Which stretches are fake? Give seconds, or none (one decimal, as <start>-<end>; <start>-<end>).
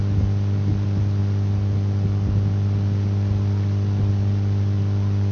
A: none